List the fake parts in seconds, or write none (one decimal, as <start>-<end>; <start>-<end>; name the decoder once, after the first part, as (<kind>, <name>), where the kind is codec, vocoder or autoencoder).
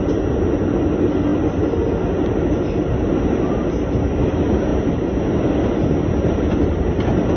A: none